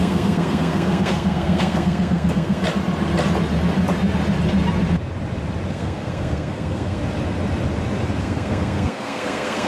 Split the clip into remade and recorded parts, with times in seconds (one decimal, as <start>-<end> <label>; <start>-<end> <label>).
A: 0.0-2.6 remade; 2.6-5.7 recorded; 5.7-7.0 remade; 7.0-8.2 recorded; 8.2-9.7 remade